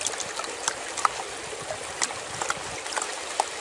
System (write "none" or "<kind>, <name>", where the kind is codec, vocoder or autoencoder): none